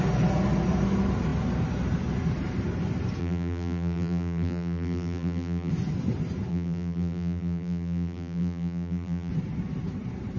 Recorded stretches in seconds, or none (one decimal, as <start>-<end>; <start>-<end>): 0.0-3.2; 5.7-6.5; 9.3-10.4